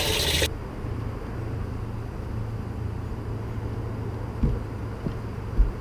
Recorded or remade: recorded